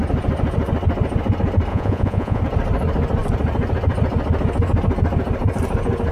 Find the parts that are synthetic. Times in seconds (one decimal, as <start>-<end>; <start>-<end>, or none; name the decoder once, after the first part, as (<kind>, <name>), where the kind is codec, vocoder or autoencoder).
1.7-2.4 (vocoder, Vocos)